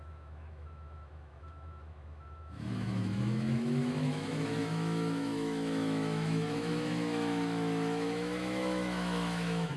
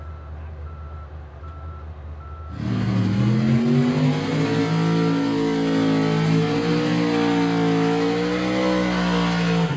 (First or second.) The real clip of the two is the second